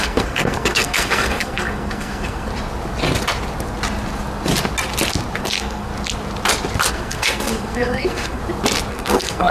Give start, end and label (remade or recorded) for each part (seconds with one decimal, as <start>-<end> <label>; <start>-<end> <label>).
0.0-2.5 remade; 2.5-5.4 recorded; 5.4-5.9 remade; 5.9-6.9 recorded; 6.9-8.4 remade; 8.4-8.9 recorded; 8.9-9.5 remade